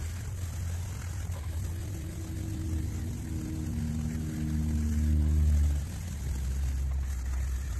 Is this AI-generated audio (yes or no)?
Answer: no